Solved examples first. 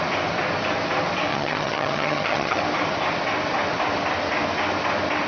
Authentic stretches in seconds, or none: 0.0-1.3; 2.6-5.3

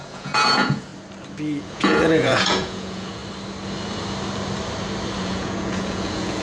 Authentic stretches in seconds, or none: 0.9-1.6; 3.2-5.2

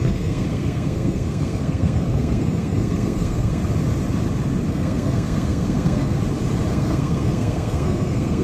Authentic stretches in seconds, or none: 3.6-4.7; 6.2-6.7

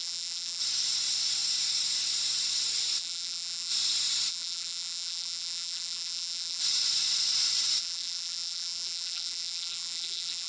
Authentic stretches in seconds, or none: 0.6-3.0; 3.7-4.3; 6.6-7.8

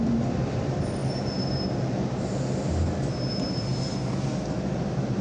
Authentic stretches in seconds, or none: 1.0-3.3; 3.7-5.2

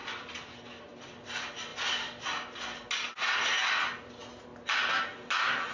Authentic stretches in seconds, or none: 0.0-5.7

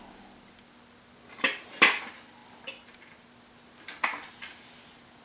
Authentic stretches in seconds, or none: 0.0-5.2

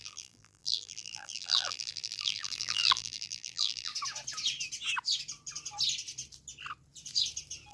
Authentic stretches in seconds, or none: 3.9-7.7